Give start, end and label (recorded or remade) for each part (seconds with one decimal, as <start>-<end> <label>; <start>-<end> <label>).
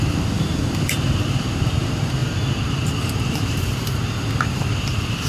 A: 0.0-2.2 remade; 2.2-2.7 recorded; 2.7-5.3 remade